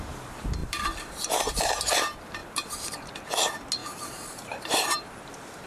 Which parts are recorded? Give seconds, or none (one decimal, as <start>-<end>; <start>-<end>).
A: 0.0-0.6; 1.5-2.4; 3.1-3.8; 5.2-5.7

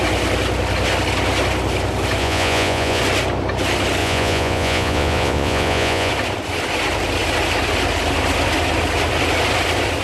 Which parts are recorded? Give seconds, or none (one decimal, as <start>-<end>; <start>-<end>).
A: 0.0-2.2; 3.0-4.0; 6.1-10.0

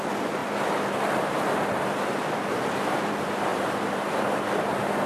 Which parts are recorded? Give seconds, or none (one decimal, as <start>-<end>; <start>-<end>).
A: 0.0-0.4; 1.8-3.5; 4.0-5.1

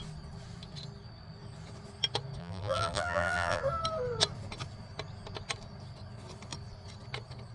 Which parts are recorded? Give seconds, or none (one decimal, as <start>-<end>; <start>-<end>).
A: 0.0-2.4; 3.6-7.5

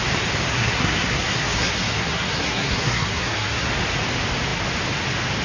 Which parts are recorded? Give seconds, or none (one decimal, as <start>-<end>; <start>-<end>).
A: 0.0-0.5; 3.7-5.4

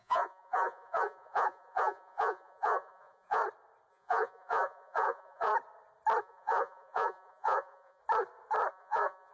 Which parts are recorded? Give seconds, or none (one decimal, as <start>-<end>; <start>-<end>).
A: 3.4-3.9; 5.5-6.2; 8.0-8.7